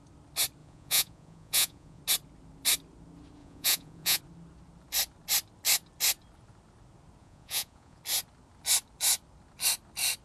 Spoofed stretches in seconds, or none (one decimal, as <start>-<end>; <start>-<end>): 0.6-2.0; 3.4-4.2; 7.2-8.0

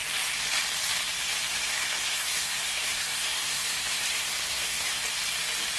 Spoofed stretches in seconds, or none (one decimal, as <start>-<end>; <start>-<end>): 1.5-5.0

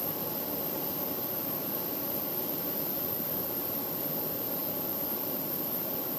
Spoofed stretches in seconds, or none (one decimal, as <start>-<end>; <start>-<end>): 1.4-2.7; 3.6-4.1

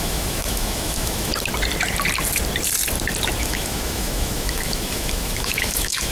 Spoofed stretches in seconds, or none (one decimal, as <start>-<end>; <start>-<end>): 0.0-1.3; 3.4-6.1

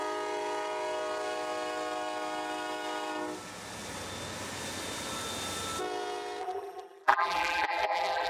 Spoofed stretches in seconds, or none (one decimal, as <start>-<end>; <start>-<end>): 6.4-8.3

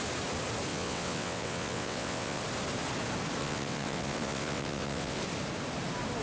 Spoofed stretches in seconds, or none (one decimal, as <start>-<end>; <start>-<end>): 0.7-2.4; 3.4-5.2

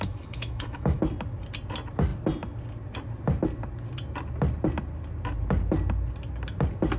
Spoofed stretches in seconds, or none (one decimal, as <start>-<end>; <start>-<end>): 0.0-1.0